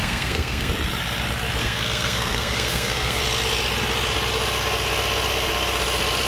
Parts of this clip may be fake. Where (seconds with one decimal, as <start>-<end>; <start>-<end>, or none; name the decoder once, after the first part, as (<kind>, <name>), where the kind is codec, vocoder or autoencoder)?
0.0-0.7 (codec, SNAC); 1.6-3.2